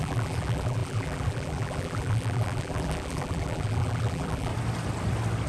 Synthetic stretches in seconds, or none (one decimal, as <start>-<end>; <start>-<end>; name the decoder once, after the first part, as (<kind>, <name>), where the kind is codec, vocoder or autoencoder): 0.0-4.5 (vocoder, BigVGAN v2)

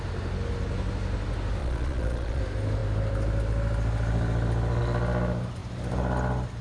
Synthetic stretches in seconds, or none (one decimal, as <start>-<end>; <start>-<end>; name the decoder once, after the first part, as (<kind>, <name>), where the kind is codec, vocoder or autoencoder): 1.6-2.4 (vocoder, Vocos)

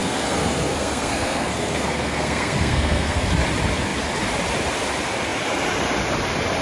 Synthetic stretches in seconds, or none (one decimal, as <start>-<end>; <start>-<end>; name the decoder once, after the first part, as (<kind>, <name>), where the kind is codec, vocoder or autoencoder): 0.0-3.3 (codec, SNAC)